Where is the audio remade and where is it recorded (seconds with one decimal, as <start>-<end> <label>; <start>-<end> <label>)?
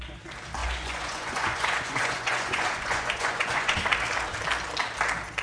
0.0-0.6 recorded; 0.6-3.8 remade; 3.8-5.4 recorded